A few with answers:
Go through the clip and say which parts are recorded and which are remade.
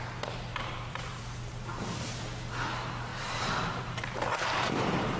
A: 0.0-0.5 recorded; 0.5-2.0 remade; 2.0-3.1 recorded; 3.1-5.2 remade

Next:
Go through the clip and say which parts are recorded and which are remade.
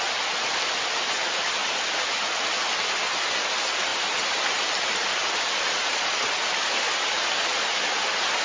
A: 0.0-1.6 recorded; 1.6-2.5 remade; 2.5-8.4 recorded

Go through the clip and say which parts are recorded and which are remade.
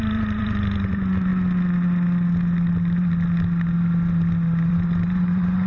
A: 0.0-1.3 remade; 1.3-4.7 recorded; 4.7-5.7 remade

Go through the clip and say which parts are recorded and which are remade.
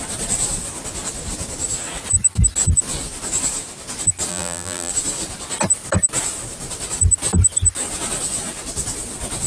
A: 0.0-4.3 recorded; 4.3-4.9 remade; 4.9-9.5 recorded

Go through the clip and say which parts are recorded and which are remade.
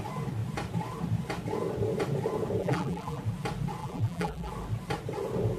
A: 0.0-2.6 recorded; 2.6-3.2 remade; 3.2-3.8 recorded; 3.8-4.5 remade; 4.5-5.6 recorded